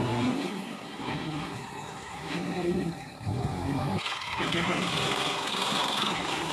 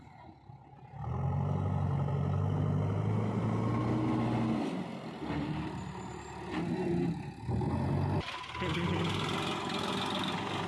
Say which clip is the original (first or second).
second